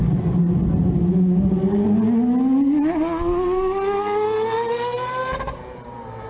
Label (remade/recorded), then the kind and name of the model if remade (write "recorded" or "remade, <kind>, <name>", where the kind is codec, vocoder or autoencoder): recorded